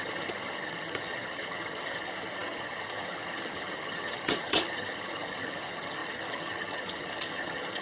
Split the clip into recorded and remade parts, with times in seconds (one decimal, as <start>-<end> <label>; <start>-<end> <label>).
0.0-7.8 remade